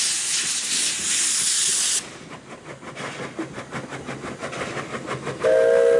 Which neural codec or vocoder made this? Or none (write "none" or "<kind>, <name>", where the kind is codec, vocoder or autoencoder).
none